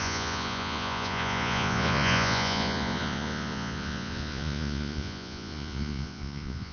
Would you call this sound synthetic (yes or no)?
yes